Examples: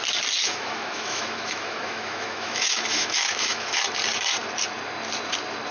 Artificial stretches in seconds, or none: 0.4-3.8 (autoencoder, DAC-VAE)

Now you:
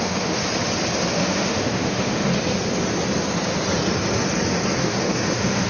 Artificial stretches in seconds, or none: 0.0-0.4 (autoencoder, DAC-VAE); 1.1-2.3; 4.8-5.7

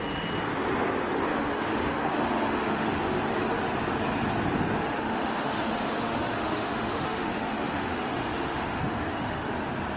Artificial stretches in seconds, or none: 1.3-3.0 (autoencoder, DAC-VAE); 4.8-9.5